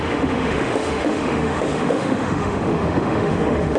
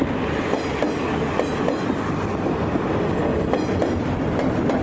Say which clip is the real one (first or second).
second